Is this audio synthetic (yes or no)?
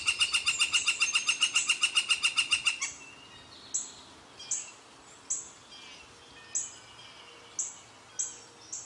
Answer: no